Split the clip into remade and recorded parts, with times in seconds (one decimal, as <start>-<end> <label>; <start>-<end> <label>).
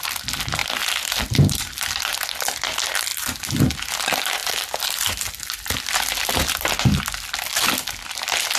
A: 0.0-8.6 recorded